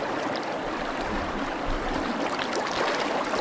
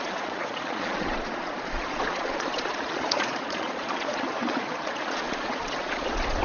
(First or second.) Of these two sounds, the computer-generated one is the second